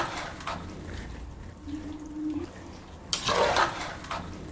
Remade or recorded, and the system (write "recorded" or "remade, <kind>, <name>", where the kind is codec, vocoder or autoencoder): recorded